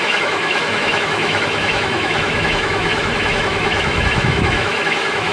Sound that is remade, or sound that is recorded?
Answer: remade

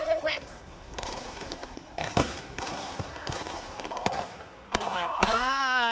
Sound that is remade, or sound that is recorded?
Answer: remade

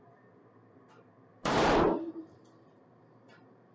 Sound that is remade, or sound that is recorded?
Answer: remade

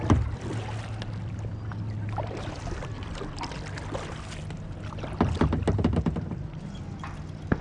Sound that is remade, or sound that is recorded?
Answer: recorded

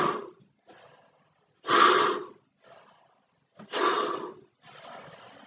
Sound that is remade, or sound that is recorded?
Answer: recorded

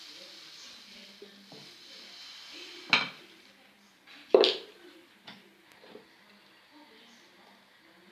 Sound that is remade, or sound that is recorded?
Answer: recorded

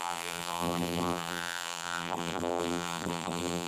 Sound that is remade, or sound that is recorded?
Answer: remade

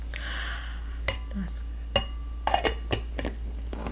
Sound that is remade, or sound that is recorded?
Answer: recorded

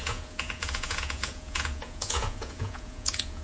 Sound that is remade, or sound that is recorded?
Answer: remade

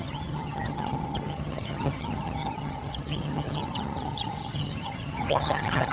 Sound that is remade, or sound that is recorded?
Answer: remade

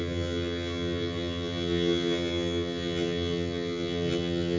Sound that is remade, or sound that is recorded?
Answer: remade